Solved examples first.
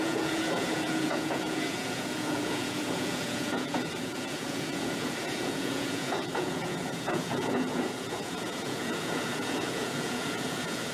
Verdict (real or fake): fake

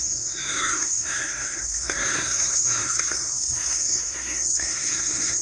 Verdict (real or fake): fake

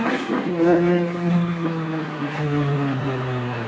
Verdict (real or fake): fake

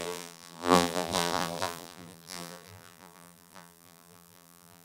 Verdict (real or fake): fake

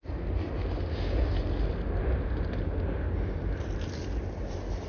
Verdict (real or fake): real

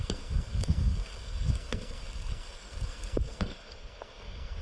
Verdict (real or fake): fake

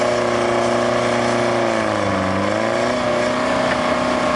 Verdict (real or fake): real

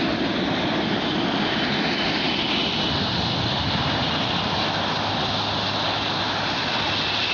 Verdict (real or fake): real